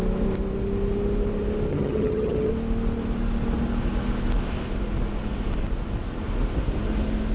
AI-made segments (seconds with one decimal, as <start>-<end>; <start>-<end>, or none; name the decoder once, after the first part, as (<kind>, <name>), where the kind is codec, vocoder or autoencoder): 1.7-2.5 (vocoder, HiFi-GAN)